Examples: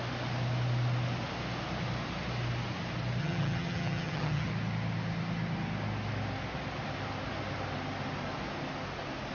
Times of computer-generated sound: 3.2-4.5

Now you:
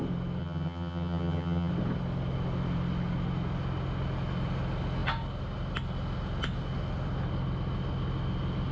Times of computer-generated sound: 0.4-1.7

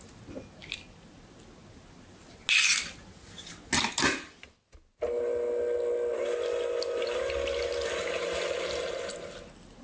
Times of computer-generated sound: none